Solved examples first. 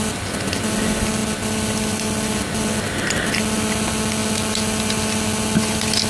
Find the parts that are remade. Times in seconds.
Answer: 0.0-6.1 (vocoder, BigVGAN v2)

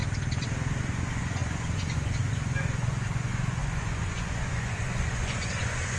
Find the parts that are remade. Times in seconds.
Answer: 0.8-6.0 (vocoder, Vocos)

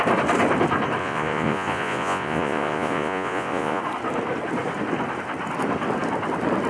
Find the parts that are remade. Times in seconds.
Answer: 1.0-3.8 (vocoder, Vocos)

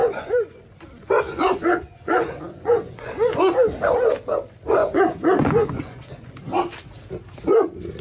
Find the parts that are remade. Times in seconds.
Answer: 0.0-0.6 (vocoder, Vocos); 1.3-3.5; 4.8-6.3